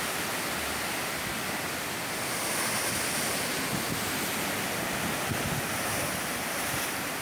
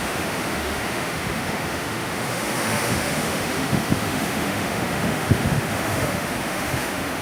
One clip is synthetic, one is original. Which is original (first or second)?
first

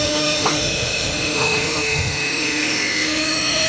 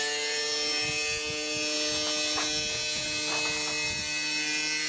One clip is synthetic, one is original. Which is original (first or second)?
second